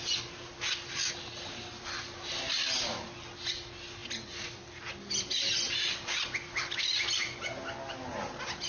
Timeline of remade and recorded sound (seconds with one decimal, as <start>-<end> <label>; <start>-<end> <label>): 0.0-8.7 recorded